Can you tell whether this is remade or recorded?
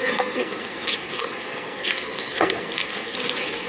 remade